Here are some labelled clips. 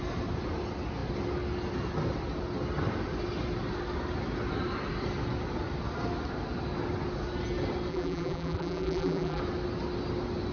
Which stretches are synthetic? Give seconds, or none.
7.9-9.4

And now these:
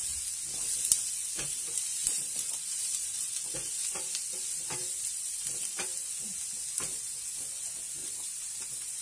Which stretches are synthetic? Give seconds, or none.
2.0-6.1; 8.0-9.0